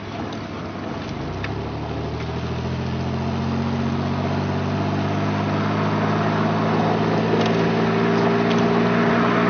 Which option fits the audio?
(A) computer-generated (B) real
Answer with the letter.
B